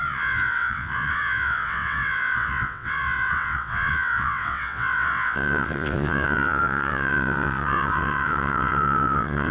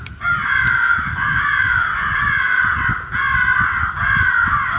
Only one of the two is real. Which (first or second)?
second